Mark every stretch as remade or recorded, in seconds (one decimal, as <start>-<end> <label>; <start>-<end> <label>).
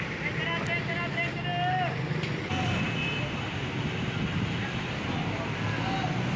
0.0-6.4 recorded